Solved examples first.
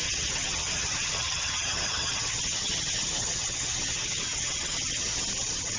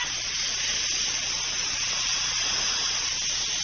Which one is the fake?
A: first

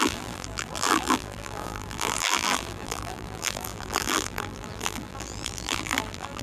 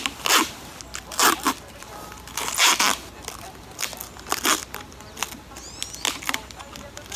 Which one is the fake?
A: first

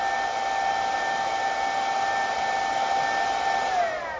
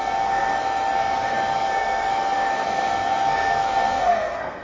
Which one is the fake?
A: second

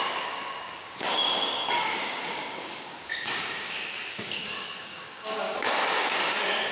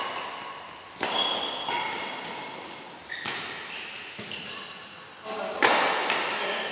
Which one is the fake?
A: first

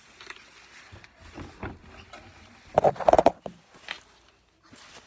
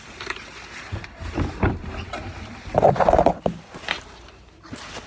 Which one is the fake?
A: second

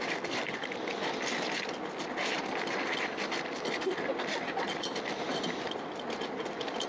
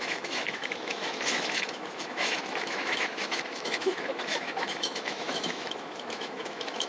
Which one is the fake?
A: second